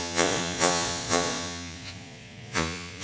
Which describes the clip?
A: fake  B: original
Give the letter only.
A